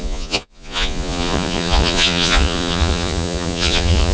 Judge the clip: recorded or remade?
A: remade